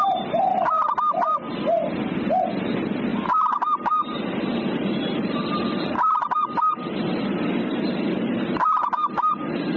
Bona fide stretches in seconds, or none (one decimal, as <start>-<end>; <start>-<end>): 0.0-9.8